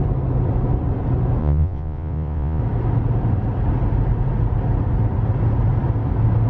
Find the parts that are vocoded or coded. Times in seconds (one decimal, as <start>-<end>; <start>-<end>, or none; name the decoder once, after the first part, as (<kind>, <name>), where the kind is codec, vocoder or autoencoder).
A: 1.4-2.6 (vocoder, Vocos)